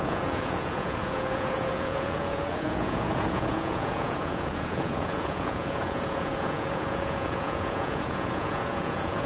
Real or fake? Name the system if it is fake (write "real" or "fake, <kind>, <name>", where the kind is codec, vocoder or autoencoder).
fake, vocoder, Vocos